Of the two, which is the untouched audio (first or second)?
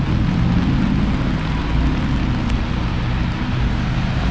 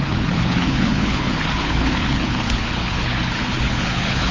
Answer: first